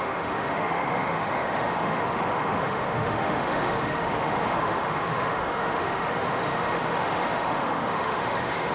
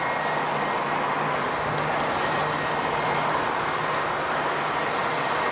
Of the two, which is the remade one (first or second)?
first